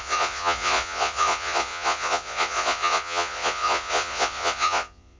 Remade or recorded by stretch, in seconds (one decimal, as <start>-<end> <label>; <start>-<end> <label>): 0.0-5.2 remade

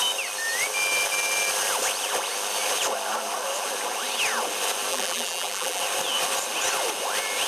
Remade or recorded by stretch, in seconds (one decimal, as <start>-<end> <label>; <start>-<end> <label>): 0.0-4.9 recorded; 4.9-5.8 remade; 5.8-7.5 recorded

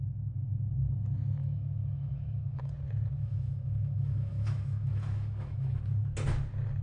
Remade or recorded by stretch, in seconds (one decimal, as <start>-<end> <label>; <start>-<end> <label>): 0.0-1.4 recorded; 1.4-2.7 remade; 2.7-3.2 recorded; 3.2-5.8 remade; 5.8-6.8 recorded

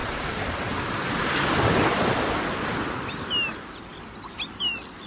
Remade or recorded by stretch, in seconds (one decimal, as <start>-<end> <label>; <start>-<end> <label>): 0.0-5.1 recorded

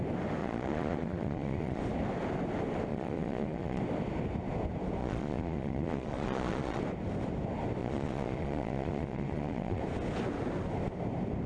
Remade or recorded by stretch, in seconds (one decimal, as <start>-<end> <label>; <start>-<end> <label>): 0.0-0.4 recorded; 0.4-1.8 remade; 1.8-2.9 recorded; 2.9-3.8 remade; 3.8-5.0 recorded; 5.0-6.8 remade; 6.8-7.8 recorded; 7.8-9.8 remade; 9.8-11.5 recorded